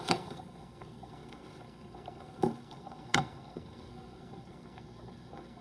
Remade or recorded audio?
remade